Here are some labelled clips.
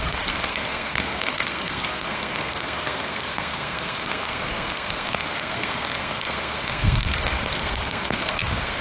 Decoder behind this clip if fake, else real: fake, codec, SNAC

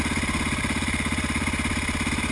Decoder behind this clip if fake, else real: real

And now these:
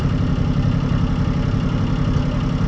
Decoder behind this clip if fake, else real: real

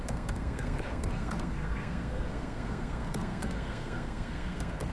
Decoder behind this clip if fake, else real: fake, codec, SNAC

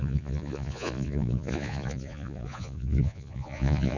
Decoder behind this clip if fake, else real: fake, vocoder, Vocos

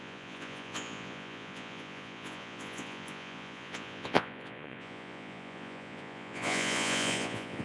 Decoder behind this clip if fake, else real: fake, vocoder, Vocos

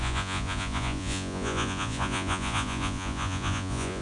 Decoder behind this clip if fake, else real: fake, vocoder, Vocos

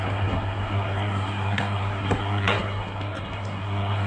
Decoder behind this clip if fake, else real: fake, codec, SNAC